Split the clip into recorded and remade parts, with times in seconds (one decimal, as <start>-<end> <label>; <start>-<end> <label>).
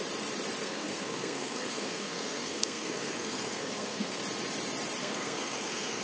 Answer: 0.0-0.6 recorded; 0.6-4.2 remade; 4.2-5.0 recorded; 5.0-6.0 remade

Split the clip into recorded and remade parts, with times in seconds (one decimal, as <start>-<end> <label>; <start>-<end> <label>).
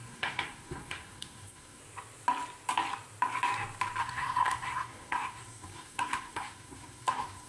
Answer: 0.0-1.8 remade; 1.8-4.0 recorded; 4.0-7.5 remade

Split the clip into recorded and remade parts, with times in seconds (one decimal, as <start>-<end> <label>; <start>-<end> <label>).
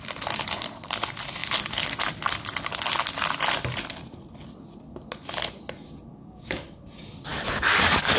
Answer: 0.0-6.1 recorded; 6.1-6.6 remade; 6.6-7.3 recorded; 7.3-8.2 remade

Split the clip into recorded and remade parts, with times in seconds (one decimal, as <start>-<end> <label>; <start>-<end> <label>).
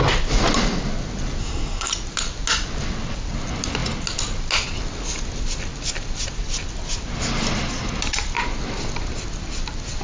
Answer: 0.0-1.4 recorded; 1.4-1.9 remade; 1.9-10.0 recorded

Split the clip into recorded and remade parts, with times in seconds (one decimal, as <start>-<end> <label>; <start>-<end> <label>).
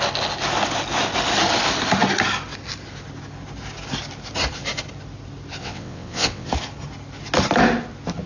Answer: 0.0-5.6 recorded; 5.6-6.5 remade; 6.5-8.3 recorded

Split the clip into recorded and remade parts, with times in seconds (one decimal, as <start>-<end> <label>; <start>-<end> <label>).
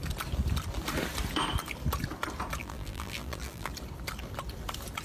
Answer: 0.0-2.6 recorded; 2.6-3.7 remade; 3.7-5.0 recorded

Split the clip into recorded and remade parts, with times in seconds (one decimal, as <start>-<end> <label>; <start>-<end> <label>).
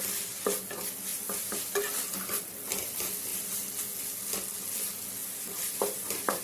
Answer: 0.0-1.1 recorded; 1.1-1.7 remade; 1.7-5.2 recorded; 5.2-6.4 remade